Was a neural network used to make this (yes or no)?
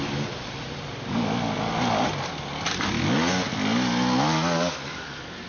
no